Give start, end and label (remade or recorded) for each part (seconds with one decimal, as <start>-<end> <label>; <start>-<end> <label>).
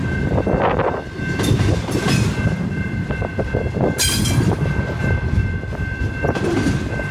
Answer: 0.0-7.1 recorded